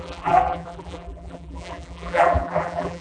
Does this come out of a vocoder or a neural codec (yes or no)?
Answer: yes